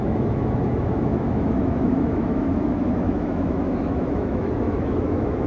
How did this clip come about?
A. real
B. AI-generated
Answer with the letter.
B